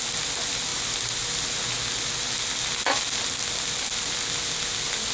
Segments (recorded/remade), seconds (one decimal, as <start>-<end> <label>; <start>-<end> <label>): 0.0-5.1 recorded